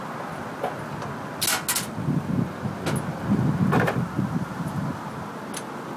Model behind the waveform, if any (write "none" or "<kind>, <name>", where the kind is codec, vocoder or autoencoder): none